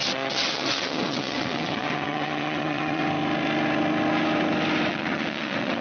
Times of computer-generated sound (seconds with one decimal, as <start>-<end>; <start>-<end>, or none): 0.0-3.0; 4.9-5.8